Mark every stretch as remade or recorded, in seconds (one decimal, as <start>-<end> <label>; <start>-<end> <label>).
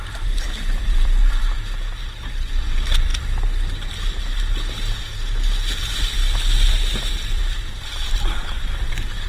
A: 0.0-1.6 remade; 1.6-2.6 recorded; 2.6-3.1 remade; 3.1-5.7 recorded; 5.7-6.2 remade; 6.2-7.0 recorded; 7.0-9.3 remade